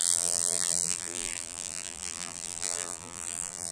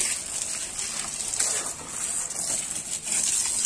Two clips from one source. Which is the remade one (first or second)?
first